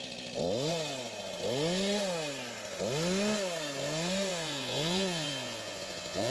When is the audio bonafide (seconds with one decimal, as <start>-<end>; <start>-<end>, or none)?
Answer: 0.0-4.3